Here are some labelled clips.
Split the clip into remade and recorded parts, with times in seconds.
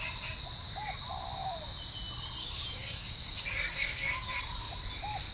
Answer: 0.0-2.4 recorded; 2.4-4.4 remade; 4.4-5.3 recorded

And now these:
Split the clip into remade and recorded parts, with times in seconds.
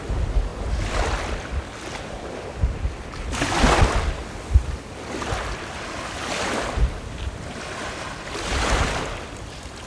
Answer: 0.0-9.9 recorded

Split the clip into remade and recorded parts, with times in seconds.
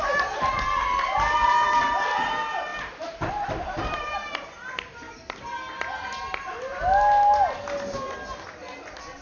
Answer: 0.0-9.2 recorded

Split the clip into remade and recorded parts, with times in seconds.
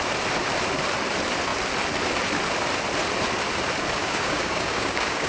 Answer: 0.0-4.0 recorded; 4.0-5.3 remade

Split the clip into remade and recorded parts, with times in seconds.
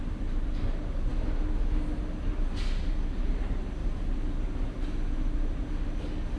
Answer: 0.0-6.4 recorded